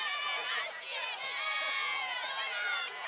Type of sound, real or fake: fake